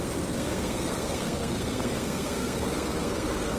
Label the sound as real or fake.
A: fake